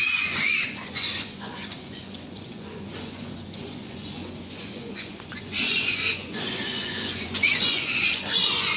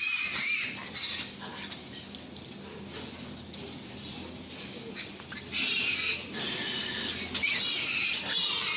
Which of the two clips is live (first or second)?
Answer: second